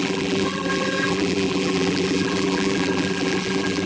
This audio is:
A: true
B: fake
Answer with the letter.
B